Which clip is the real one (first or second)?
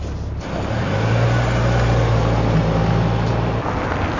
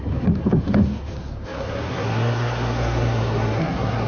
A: first